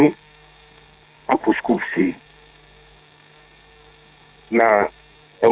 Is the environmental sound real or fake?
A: fake